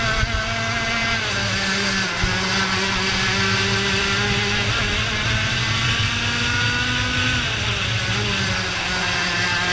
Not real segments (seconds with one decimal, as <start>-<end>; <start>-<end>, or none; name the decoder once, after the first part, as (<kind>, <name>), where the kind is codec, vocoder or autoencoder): none